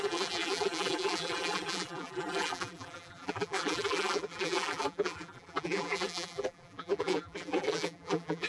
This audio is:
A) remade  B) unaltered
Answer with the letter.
A